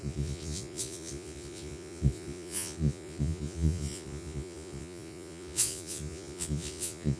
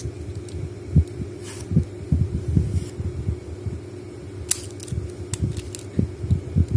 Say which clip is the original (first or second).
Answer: second